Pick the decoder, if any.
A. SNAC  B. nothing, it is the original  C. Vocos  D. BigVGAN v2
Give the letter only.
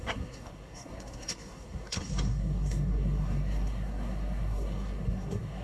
A